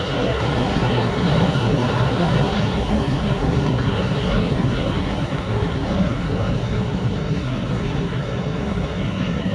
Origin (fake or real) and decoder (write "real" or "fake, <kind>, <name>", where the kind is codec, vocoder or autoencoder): fake, codec, SNAC